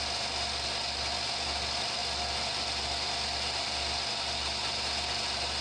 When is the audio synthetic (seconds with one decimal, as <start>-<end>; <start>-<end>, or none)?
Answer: none